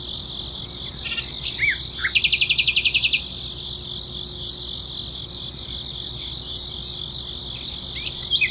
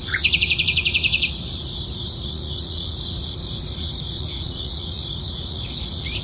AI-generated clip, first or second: second